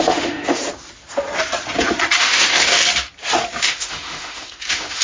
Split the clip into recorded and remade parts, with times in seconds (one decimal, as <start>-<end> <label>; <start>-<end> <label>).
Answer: 0.0-0.6 remade; 0.6-2.2 recorded; 2.2-2.8 remade; 2.8-3.6 recorded; 3.6-5.0 remade